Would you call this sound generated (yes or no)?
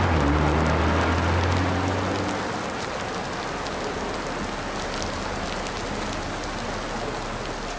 no